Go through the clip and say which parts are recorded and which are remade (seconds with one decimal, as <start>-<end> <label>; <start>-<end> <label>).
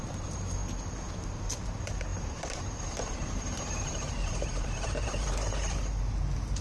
0.0-2.1 recorded; 2.1-5.2 remade; 5.2-6.6 recorded